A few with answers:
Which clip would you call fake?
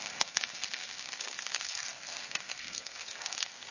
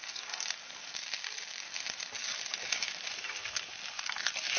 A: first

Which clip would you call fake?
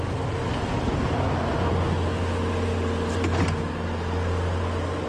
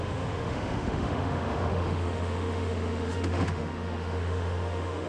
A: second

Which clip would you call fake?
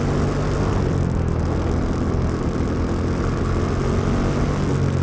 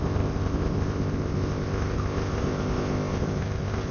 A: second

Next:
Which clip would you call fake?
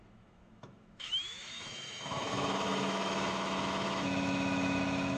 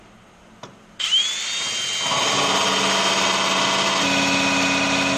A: first